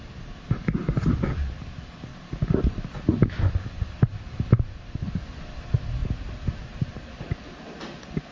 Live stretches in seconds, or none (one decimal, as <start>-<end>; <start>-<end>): 0.0-2.1; 3.0-6.0; 7.1-8.3